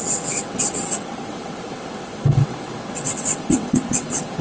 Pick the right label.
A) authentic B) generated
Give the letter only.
B